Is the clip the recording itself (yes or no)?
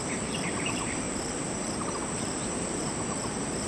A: no